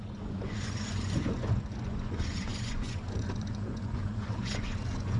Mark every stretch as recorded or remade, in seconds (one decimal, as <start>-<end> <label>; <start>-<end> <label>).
0.0-5.2 remade